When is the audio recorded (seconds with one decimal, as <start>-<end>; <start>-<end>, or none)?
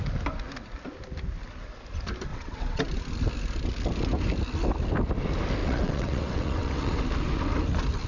0.0-2.3; 2.8-5.6; 7.0-8.1